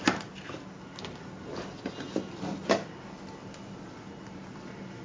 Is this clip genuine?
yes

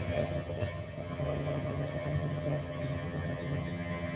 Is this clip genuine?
no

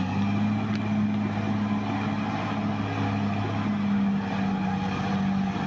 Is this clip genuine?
yes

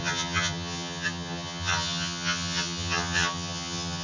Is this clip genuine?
no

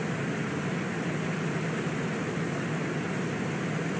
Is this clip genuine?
yes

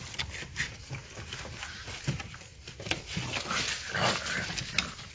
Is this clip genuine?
yes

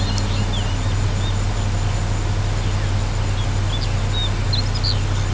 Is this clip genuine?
yes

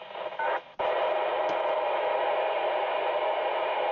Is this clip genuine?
yes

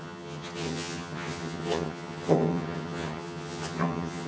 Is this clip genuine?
no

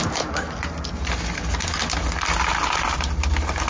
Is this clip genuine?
yes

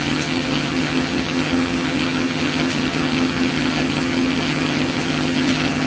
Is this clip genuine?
no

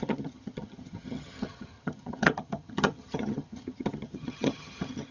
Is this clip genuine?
no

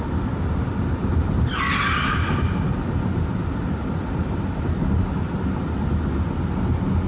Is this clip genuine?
yes